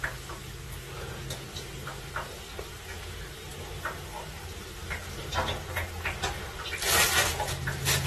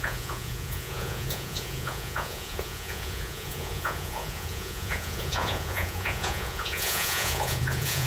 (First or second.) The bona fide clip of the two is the first